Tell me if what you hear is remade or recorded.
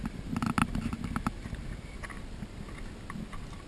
recorded